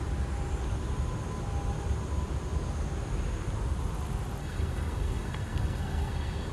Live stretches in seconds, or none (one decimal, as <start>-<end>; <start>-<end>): 0.0-4.4